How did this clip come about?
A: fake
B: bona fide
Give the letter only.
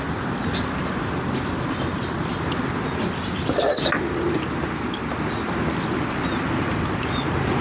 B